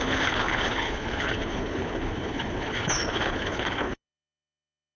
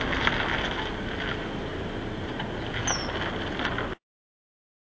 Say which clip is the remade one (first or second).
first